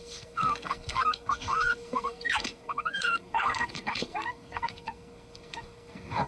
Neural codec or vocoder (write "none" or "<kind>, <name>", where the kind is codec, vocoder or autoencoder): codec, SNAC